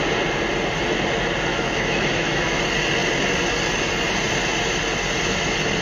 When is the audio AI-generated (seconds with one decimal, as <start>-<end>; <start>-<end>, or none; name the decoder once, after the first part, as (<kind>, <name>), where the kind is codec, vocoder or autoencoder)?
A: 1.5-2.6 (autoencoder, DAC-VAE)